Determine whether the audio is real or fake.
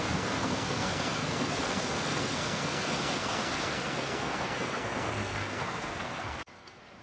fake